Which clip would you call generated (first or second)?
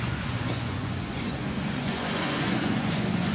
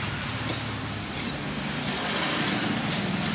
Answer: first